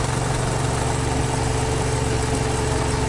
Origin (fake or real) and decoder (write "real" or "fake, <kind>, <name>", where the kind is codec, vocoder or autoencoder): real